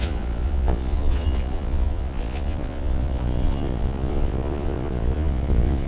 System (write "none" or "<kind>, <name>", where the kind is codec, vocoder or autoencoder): vocoder, Vocos